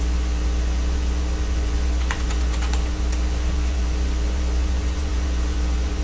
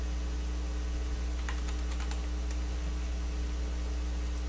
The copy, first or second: first